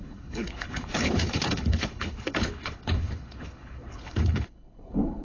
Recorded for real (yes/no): no